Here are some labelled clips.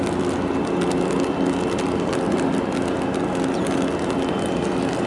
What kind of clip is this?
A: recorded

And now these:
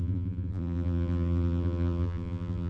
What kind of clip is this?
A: remade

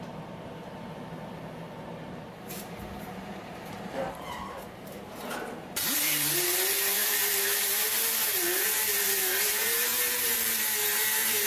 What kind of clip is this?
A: remade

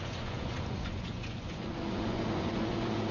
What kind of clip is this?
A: remade